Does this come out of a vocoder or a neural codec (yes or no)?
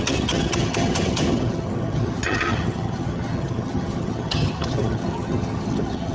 yes